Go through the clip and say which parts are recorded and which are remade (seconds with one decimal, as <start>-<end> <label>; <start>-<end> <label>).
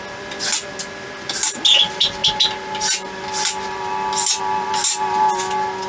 0.0-5.9 recorded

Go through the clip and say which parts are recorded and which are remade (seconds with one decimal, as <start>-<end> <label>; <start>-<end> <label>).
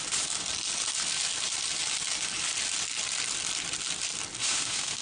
0.0-4.4 recorded; 4.4-5.0 remade